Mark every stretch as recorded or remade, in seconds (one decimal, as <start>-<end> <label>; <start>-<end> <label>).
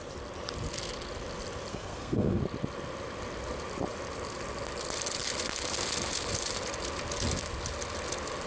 0.0-1.7 recorded; 1.7-2.4 remade; 2.4-8.5 recorded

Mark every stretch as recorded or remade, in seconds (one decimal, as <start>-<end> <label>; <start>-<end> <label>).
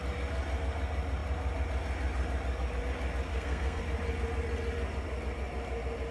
0.0-3.3 recorded; 3.3-3.8 remade; 3.8-6.1 recorded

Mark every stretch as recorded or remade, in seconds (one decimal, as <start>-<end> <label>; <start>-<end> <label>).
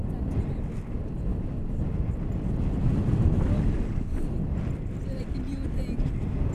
0.0-6.5 recorded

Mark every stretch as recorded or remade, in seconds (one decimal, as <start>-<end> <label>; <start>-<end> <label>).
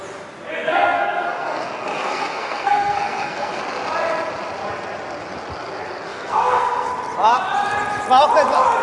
0.0-0.5 recorded; 0.5-3.6 remade; 3.6-6.1 recorded; 6.1-6.9 remade; 6.9-8.8 recorded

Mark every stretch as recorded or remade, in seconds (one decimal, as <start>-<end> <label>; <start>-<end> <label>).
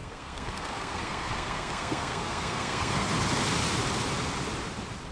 0.0-3.1 remade; 3.1-5.1 recorded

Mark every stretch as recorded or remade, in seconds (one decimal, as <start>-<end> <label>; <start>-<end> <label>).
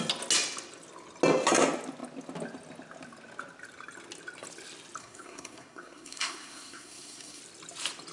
0.0-5.0 recorded; 5.0-7.4 remade; 7.4-8.1 recorded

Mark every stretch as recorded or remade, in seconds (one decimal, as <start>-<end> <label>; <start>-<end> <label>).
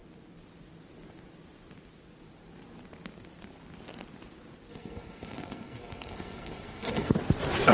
0.0-4.7 recorded; 4.7-7.1 remade; 7.1-7.7 recorded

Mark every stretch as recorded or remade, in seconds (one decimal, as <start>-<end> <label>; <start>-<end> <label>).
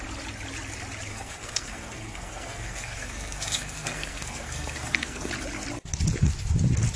0.0-1.1 recorded; 1.1-5.3 remade; 5.3-7.0 recorded